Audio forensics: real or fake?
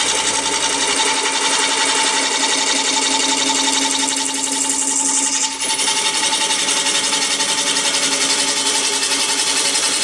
real